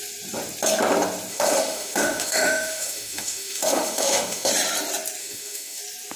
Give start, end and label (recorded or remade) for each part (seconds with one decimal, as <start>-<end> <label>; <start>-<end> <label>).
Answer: 0.0-1.3 recorded; 1.3-4.5 remade; 4.5-5.2 recorded; 5.2-5.8 remade; 5.8-6.2 recorded